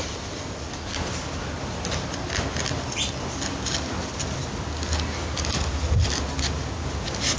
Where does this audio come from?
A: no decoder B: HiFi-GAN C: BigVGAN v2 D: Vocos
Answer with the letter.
A